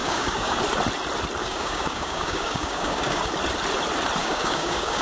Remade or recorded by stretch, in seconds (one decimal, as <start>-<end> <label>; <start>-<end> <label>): 0.0-0.6 remade; 0.6-1.4 recorded; 1.4-3.3 remade; 3.3-4.2 recorded; 4.2-5.0 remade